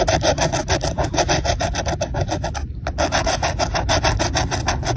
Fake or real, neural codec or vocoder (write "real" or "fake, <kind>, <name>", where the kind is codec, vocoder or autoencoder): real